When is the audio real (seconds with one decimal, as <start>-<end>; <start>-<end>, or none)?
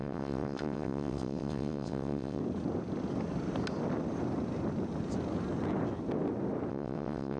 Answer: 2.4-6.7